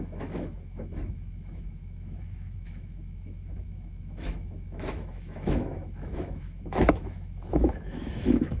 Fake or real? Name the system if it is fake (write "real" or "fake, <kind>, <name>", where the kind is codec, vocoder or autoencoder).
fake, autoencoder, DAC-VAE